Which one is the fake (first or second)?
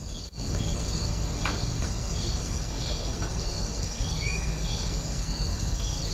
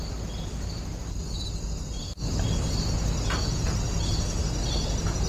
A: first